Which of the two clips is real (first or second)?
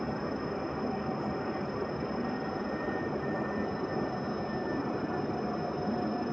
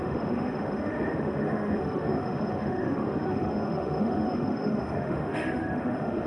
first